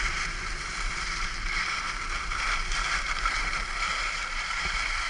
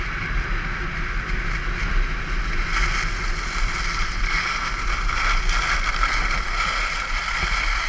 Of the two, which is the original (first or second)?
second